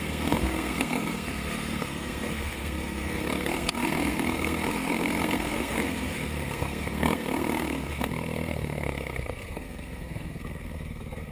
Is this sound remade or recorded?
remade